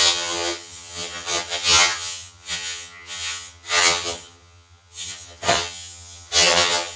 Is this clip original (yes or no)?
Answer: no